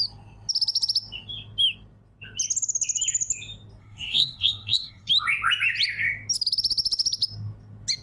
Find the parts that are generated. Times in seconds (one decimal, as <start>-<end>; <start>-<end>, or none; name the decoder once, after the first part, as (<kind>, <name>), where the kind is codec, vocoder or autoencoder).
3.8-5.1 (codec, SNAC)